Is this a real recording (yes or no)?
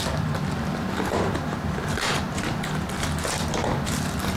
yes